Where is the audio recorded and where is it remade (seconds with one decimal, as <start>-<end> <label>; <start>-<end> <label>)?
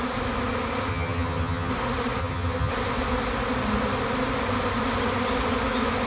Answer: 0.0-0.9 recorded; 0.9-1.7 remade; 1.7-2.2 recorded; 2.2-2.7 remade; 2.7-6.1 recorded